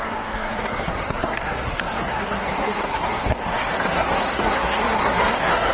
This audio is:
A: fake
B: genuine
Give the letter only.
A